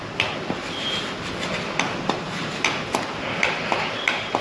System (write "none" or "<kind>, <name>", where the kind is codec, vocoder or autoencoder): none